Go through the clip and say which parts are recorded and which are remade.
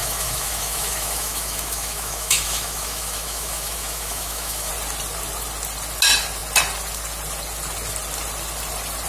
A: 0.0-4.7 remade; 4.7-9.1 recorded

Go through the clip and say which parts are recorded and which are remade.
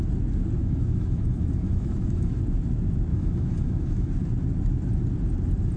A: 0.0-0.6 recorded; 0.6-2.4 remade; 2.4-3.1 recorded; 3.1-4.1 remade; 4.1-5.8 recorded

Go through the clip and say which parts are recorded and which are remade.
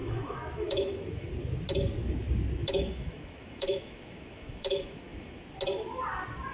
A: 0.0-1.3 remade; 1.3-2.6 recorded; 2.6-5.4 remade; 5.4-6.5 recorded